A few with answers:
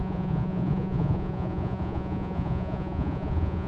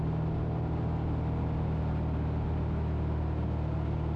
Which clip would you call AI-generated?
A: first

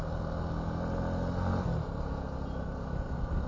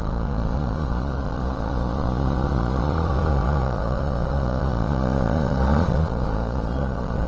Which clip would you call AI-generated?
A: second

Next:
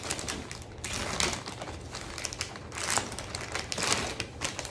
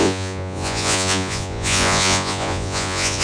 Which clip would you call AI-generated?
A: second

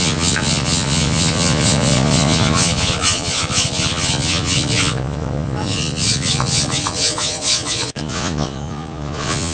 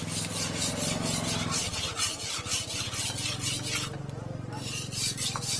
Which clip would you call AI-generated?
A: first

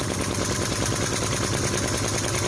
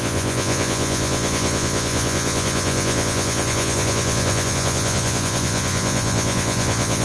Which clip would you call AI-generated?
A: second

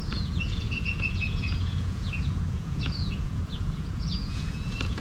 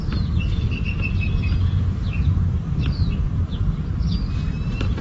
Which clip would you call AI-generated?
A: first